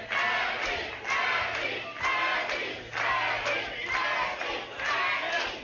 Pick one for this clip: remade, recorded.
recorded